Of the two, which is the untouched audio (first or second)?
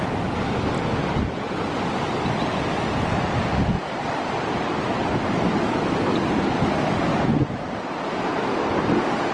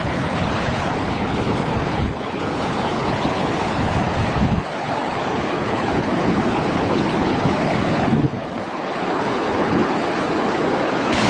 first